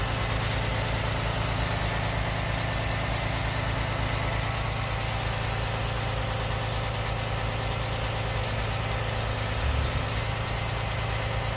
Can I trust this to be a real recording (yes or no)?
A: yes